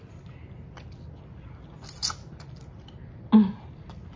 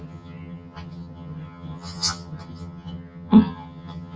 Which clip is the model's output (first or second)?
second